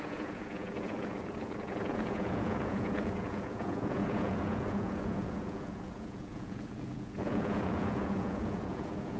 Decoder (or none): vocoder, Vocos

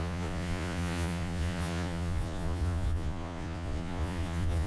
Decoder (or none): vocoder, Vocos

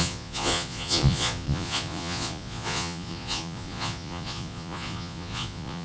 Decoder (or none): vocoder, Vocos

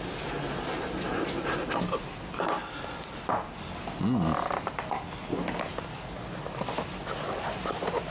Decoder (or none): none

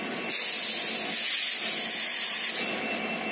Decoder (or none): none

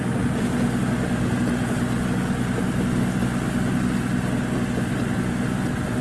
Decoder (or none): none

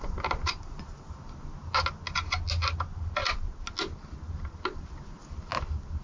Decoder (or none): none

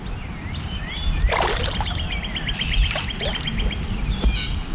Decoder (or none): none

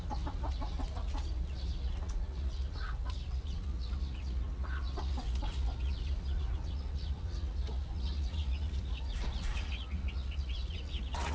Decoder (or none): vocoder, Vocos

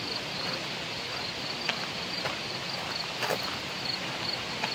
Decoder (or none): none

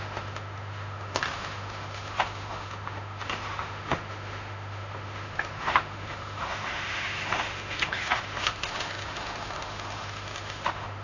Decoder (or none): autoencoder, DAC-VAE